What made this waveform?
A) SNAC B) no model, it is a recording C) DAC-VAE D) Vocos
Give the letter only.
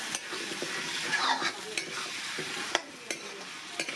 B